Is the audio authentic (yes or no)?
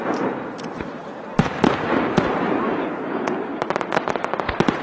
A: yes